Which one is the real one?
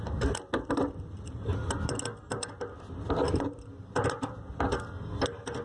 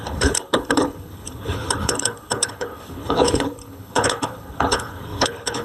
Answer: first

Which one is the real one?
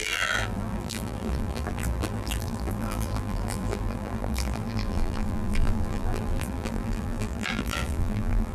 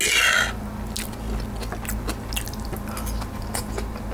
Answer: second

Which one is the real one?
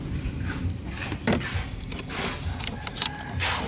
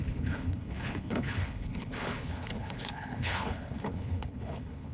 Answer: first